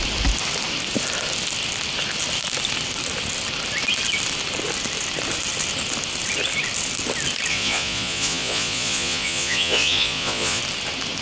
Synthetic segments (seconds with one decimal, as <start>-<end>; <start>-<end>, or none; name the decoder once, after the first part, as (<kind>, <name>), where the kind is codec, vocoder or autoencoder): 7.5-10.6 (vocoder, Vocos)